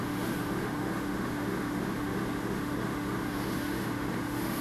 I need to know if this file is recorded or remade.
remade